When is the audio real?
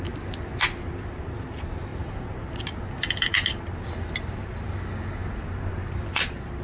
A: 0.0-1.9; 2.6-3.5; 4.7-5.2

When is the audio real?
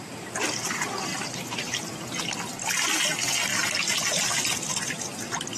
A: 0.0-1.1; 2.0-3.5; 4.7-5.6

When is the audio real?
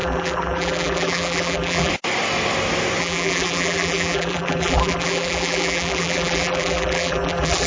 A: 1.9-3.0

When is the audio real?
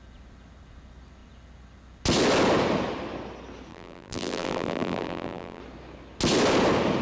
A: 0.0-3.7; 5.6-7.0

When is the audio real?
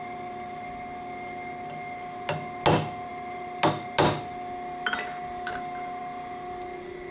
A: 0.0-7.1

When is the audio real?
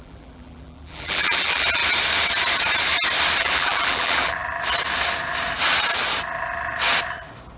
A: 1.8-3.4; 4.4-7.6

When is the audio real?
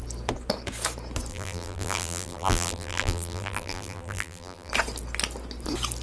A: 0.0-1.3; 4.7-6.0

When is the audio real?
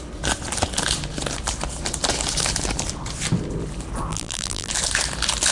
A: 0.0-4.1; 4.7-5.5